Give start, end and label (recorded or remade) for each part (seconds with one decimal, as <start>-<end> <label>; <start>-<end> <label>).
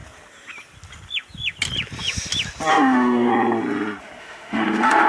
0.0-2.7 recorded; 2.7-3.3 remade; 3.3-4.2 recorded; 4.2-5.1 remade